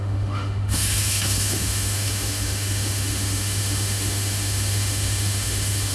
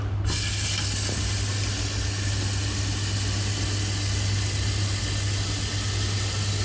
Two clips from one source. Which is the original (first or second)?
second